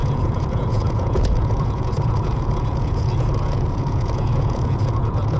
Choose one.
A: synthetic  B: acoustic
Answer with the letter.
A